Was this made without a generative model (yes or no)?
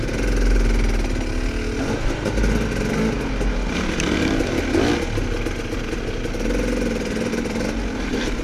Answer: yes